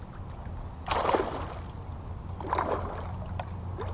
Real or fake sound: real